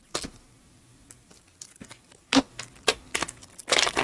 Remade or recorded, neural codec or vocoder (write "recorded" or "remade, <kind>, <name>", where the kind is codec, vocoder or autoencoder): recorded